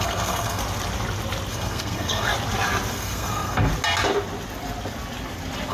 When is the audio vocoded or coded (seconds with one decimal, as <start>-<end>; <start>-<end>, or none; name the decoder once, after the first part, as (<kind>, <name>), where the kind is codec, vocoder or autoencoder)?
0.0-0.6 (codec, SNAC); 1.5-2.3; 2.9-3.7